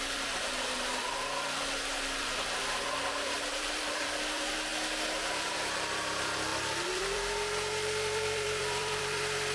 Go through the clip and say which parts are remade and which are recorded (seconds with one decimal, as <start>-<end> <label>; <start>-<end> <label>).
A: 0.0-4.7 remade; 4.7-5.3 recorded; 5.3-9.5 remade